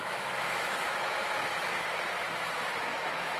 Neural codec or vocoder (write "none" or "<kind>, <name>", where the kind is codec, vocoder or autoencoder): autoencoder, DAC-VAE